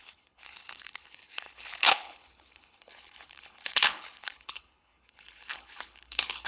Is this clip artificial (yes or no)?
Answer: yes